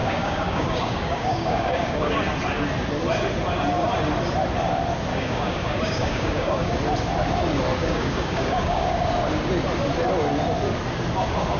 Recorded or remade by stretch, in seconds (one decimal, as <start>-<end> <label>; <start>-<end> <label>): 0.0-2.1 remade; 2.1-5.1 recorded; 5.1-6.7 remade; 6.7-7.8 recorded; 7.8-9.1 remade; 9.1-11.6 recorded